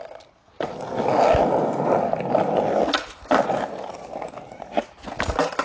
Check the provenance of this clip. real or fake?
real